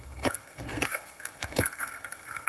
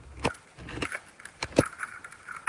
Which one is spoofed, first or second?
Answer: first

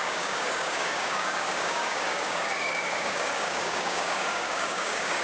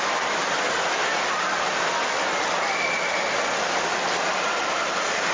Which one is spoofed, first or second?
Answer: first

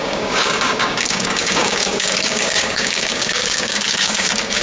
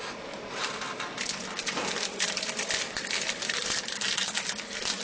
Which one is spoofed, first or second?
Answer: first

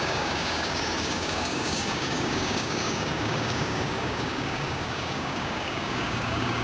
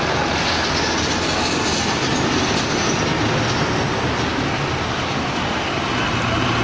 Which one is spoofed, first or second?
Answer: first